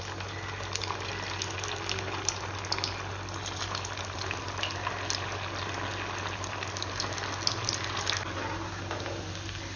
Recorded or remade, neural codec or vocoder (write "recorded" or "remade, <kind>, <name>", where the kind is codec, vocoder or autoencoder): recorded